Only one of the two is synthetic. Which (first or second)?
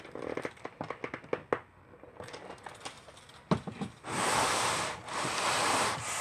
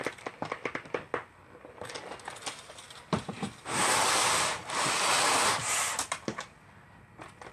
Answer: second